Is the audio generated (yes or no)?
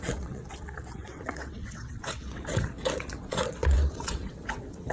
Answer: yes